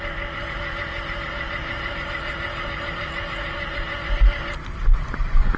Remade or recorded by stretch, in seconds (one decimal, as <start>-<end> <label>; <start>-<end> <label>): 0.0-1.6 recorded; 1.6-4.1 remade; 4.1-5.6 recorded